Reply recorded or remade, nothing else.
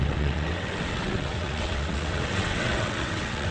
remade